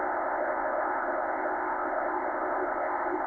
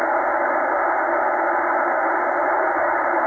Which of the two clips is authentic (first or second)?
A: second